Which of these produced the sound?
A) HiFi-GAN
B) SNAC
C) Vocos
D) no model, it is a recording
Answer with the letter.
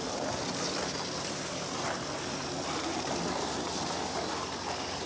D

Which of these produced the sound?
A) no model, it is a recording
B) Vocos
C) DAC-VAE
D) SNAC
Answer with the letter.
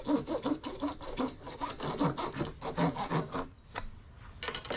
A